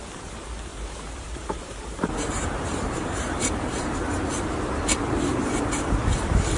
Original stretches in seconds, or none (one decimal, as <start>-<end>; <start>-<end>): 0.0-0.7; 4.7-6.6

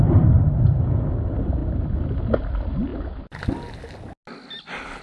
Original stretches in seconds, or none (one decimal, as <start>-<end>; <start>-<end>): 0.0-5.0

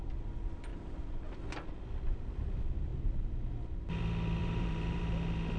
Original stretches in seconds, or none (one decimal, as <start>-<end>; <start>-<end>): 0.0-0.7; 1.4-4.4; 5.0-5.6

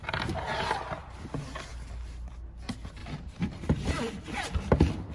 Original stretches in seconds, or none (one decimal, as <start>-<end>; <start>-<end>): 0.7-3.0; 3.9-5.1

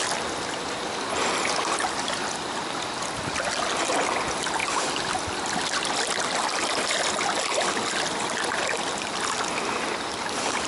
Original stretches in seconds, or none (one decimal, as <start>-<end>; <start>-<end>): 0.0-10.7

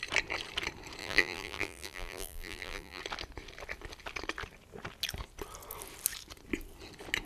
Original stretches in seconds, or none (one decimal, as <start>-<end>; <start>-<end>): 0.0-1.0; 3.0-7.3

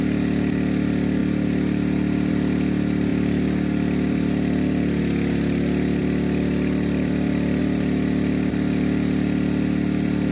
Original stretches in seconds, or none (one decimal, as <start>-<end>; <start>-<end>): 0.0-3.1; 5.0-6.0; 7.6-10.3